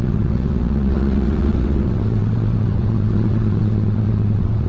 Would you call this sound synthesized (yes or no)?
yes